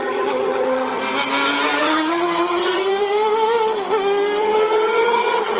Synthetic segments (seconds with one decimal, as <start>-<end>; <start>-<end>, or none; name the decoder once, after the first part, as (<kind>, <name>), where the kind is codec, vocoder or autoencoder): 0.0-1.0 (vocoder, HiFi-GAN); 1.8-2.8; 4.4-5.6